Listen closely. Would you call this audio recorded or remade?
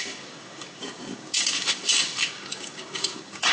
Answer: remade